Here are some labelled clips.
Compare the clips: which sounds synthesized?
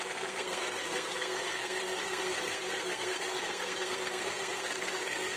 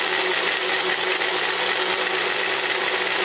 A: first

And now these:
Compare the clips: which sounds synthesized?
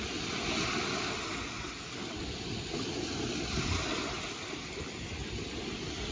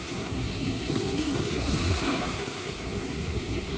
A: second